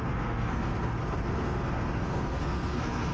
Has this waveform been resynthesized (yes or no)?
yes